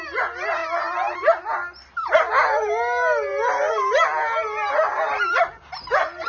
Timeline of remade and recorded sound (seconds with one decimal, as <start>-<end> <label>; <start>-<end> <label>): 0.0-6.3 recorded